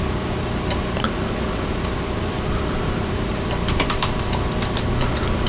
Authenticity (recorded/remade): remade